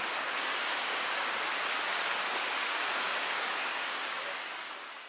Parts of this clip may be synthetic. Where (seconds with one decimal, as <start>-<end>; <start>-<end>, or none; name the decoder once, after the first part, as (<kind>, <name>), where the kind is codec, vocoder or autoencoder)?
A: 0.5-1.5 (codec, DAC); 1.9-5.1